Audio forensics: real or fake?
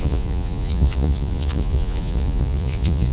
fake